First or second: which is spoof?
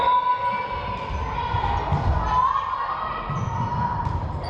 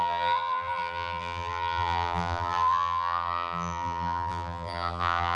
second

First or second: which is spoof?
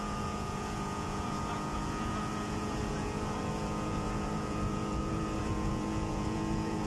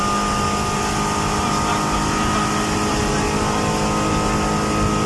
first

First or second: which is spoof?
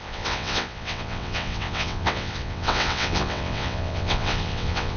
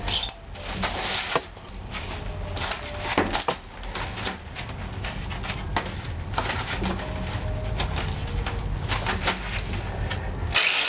first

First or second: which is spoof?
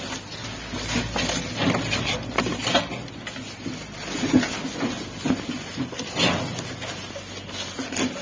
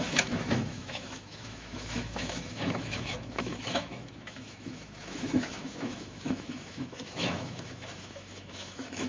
second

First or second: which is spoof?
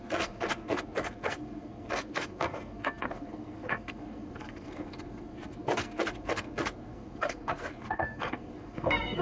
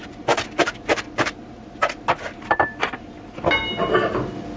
first